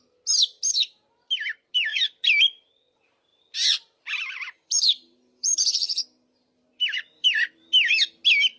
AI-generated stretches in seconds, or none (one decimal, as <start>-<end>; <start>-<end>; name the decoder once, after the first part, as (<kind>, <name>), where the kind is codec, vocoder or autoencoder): 1.9-2.7 (vocoder, BigVGAN v2); 3.3-7.6